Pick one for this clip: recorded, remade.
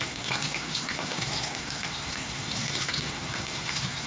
remade